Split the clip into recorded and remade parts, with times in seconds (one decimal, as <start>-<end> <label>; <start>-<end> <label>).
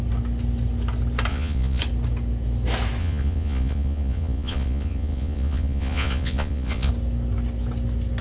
0.0-1.3 recorded; 1.3-1.8 remade; 1.8-3.0 recorded; 3.0-6.9 remade; 6.9-8.2 recorded